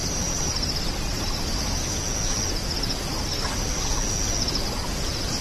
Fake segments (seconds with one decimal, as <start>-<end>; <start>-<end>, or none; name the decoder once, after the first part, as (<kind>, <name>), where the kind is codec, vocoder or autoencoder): 0.0-1.4 (vocoder, BigVGAN v2)